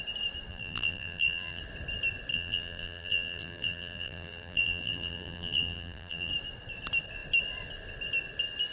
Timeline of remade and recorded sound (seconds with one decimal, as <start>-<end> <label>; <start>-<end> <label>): 0.0-0.5 recorded; 0.5-1.6 remade; 1.6-2.3 recorded; 2.3-6.3 remade; 6.3-8.7 recorded